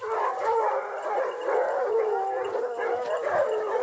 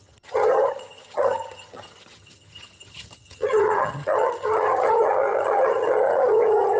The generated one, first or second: second